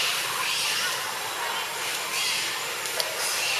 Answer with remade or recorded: recorded